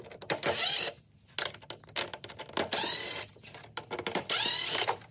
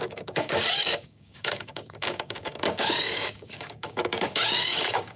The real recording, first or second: first